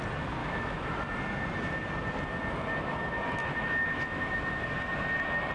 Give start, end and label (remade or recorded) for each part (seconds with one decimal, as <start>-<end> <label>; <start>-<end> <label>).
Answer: 0.0-0.4 recorded; 0.4-0.9 remade; 0.9-3.4 recorded; 3.4-4.5 remade; 4.5-5.5 recorded